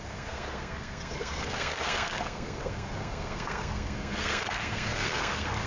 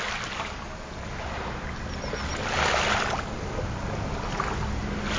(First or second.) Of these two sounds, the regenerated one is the first